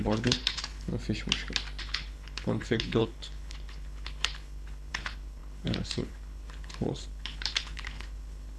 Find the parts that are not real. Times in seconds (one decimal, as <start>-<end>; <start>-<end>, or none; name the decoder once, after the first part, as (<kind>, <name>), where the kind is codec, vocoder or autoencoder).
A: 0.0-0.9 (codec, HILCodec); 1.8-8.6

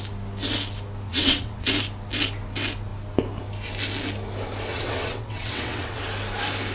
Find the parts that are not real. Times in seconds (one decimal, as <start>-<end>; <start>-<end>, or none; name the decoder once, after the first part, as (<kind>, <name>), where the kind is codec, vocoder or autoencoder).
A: 1.1-1.7 (vocoder, WaveNeXt); 4.7-6.0

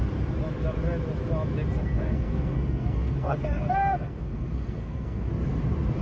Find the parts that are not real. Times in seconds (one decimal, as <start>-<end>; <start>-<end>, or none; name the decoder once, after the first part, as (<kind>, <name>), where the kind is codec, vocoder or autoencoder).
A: 1.8-5.3 (codec, SNAC)